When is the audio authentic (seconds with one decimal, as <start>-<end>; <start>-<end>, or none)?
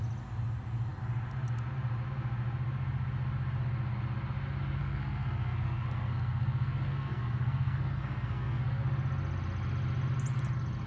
0.0-4.8; 8.8-10.9